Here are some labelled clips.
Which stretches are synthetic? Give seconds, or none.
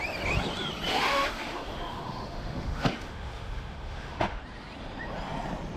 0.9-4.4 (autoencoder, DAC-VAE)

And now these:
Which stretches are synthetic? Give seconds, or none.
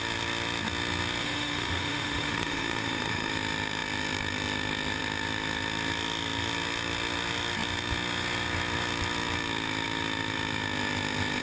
1.2-3.3 (autoencoder, DAC-VAE)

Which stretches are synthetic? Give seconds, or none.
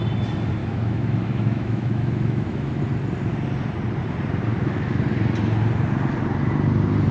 0.6-2.8 (autoencoder, DAC-VAE); 4.5-5.0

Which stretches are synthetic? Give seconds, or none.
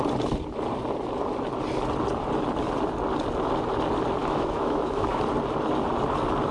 4.2-5.2 (autoencoder, DAC-VAE)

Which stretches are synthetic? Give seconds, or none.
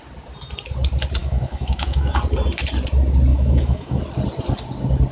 1.2-2.2 (autoencoder, DAC-VAE); 3.3-4.0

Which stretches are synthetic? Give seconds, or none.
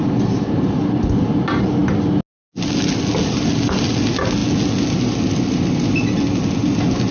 none